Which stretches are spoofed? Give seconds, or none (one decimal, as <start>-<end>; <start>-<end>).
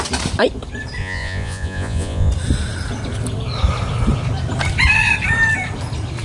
1.0-2.3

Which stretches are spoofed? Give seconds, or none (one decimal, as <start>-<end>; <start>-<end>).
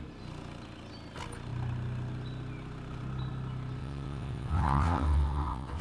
3.8-5.8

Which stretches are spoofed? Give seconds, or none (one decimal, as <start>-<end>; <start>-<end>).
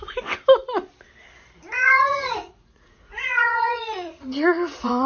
1.7-5.1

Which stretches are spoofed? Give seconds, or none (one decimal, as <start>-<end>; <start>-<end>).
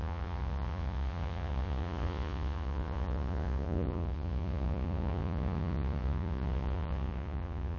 0.0-7.8